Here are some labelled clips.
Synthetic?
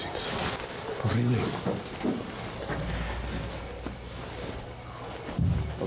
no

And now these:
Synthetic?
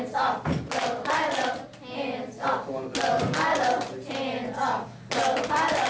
no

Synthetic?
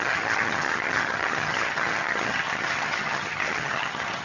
yes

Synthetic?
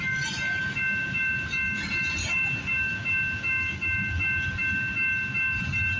no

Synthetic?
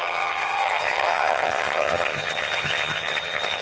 yes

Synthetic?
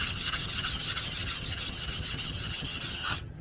yes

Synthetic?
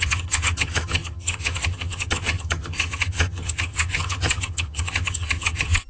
yes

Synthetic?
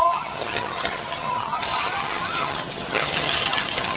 yes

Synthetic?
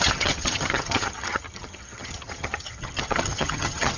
yes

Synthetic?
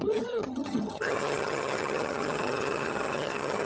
yes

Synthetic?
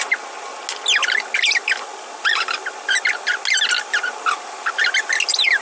no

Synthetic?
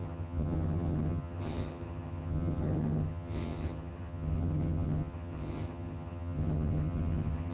yes